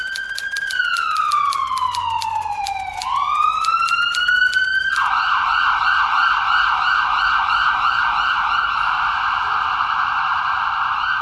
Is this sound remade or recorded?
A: recorded